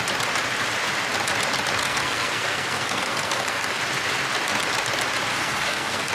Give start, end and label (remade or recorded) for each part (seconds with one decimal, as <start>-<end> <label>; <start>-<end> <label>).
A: 0.0-1.8 recorded; 1.8-3.8 remade; 3.8-5.3 recorded; 5.3-6.1 remade